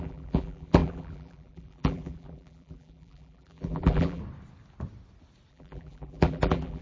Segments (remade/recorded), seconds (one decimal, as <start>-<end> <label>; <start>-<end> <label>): 0.0-4.2 remade; 4.2-5.5 recorded; 5.5-6.8 remade